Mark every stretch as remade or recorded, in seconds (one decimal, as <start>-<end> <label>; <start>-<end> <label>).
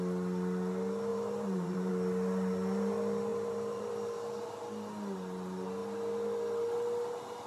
0.0-1.1 recorded; 1.1-1.9 remade; 1.9-3.3 recorded; 3.3-3.9 remade; 3.9-7.5 recorded